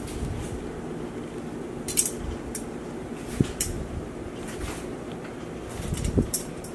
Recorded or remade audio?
recorded